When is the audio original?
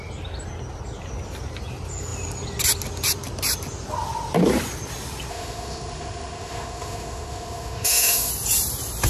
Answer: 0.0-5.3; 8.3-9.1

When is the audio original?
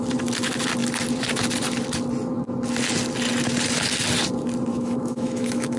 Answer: 0.0-4.7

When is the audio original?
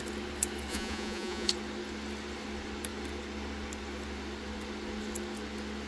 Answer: 0.0-0.7; 1.5-5.9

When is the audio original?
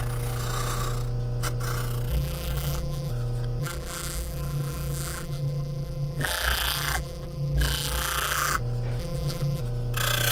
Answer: 0.0-2.1; 3.1-3.6; 8.6-9.0; 9.6-10.3